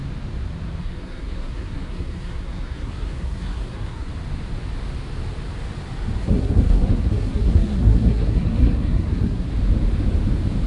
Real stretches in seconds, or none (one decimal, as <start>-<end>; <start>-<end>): 0.0-0.8; 4.1-6.2; 9.5-10.7